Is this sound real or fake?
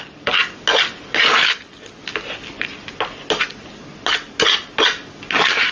real